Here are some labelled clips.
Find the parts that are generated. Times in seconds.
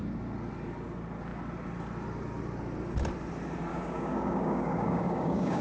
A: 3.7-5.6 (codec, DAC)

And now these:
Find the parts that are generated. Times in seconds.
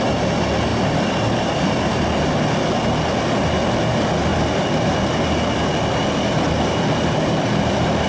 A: none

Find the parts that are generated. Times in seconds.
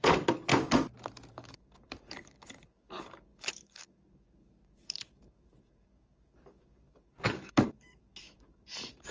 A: 0.0-0.5 (codec, DAC); 1.3-9.1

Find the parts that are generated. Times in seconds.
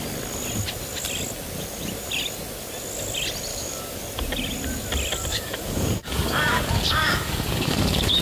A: 3.5-4.0 (codec, DAC); 5.3-8.2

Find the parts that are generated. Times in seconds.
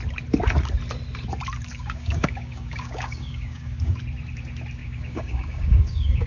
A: 1.7-4.0 (codec, DAC); 4.8-6.3